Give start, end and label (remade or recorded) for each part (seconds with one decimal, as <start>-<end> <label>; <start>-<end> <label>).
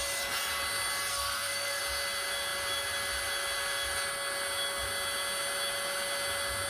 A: 0.0-1.1 recorded; 1.1-1.8 remade; 1.8-6.7 recorded